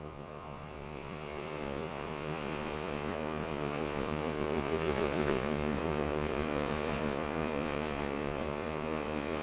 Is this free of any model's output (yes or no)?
no